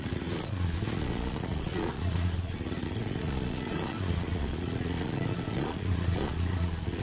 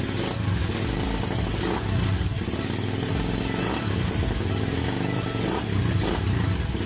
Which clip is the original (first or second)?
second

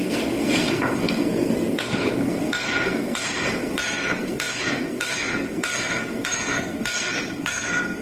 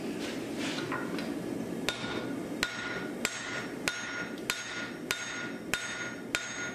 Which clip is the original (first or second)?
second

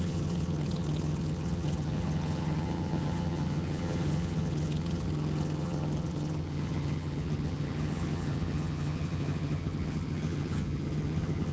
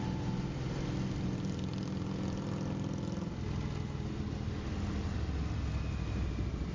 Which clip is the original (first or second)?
second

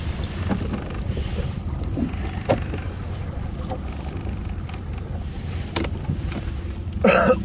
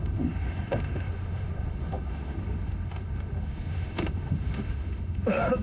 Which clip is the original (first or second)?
first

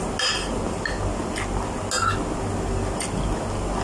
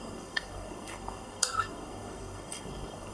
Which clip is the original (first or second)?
first